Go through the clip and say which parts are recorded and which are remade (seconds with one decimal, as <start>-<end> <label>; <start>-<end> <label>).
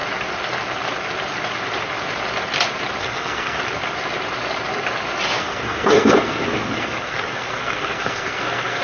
0.0-3.0 recorded; 3.0-3.6 remade; 3.6-5.4 recorded; 5.4-8.8 remade